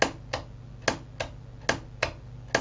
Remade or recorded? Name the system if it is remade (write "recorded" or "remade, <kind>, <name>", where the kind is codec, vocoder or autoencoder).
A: recorded